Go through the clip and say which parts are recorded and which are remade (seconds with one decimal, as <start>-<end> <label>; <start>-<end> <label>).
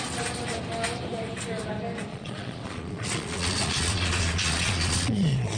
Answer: 0.0-2.1 recorded; 2.1-5.6 remade